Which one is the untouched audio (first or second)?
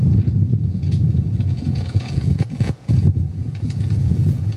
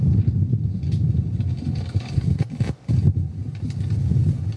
second